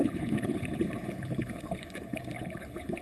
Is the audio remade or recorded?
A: remade